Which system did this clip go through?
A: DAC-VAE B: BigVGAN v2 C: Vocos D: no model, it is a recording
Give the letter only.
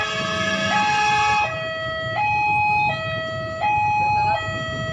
D